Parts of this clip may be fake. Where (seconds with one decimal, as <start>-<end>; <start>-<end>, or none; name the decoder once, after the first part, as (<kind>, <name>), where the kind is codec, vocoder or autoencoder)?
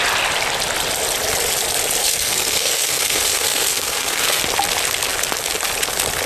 2.0-4.4 (codec, SNAC)